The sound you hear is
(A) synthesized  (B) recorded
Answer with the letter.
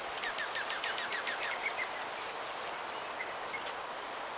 B